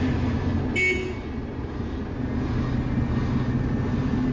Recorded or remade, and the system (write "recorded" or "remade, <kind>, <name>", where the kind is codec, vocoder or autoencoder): recorded